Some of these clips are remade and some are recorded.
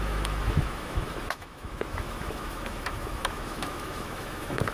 remade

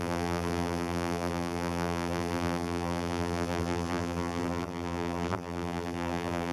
remade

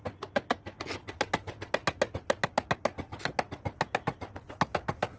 recorded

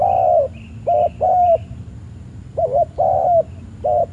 remade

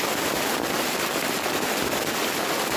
recorded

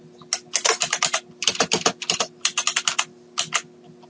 recorded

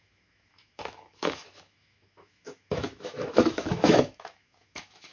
remade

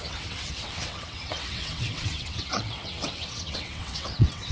remade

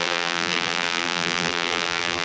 remade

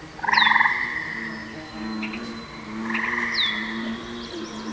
recorded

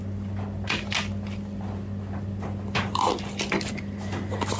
recorded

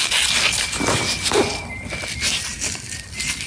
remade